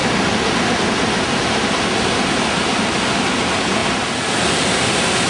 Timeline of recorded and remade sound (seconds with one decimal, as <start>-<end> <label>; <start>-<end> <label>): 0.0-5.3 recorded

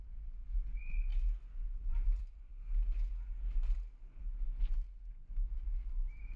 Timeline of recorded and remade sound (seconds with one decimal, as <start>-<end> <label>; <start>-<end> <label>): 0.0-1.1 remade; 1.1-1.9 recorded; 1.9-2.5 remade; 2.5-5.5 recorded; 5.5-6.4 remade

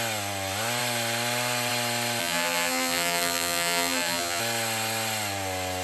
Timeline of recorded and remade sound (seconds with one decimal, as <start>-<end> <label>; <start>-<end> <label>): 0.0-2.2 recorded; 2.2-4.4 remade; 4.4-5.8 recorded

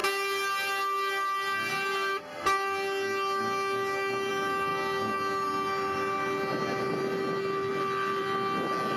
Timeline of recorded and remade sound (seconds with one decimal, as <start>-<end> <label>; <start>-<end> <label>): 0.0-9.0 recorded